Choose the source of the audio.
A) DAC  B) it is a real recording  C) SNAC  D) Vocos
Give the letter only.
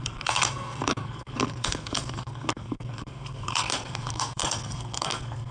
C